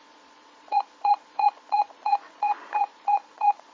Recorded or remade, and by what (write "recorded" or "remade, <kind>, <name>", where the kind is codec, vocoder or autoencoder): remade, vocoder, Vocos